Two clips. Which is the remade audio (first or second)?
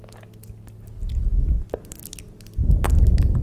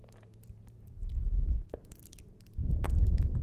second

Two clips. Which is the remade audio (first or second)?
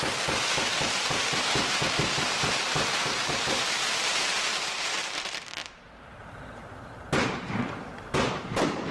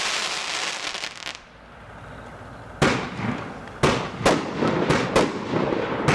first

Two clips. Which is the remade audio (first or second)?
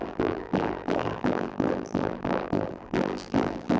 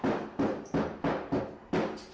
first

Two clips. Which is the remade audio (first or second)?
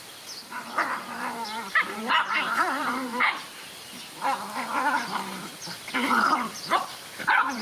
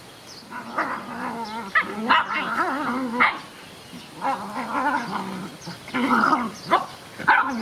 first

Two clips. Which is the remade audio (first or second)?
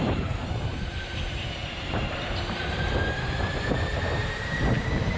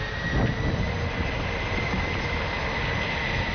first